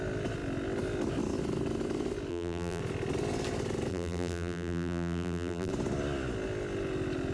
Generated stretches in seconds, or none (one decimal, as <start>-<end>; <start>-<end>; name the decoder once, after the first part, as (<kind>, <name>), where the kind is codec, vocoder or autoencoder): 2.3-2.8 (vocoder, BigVGAN v2); 3.9-5.7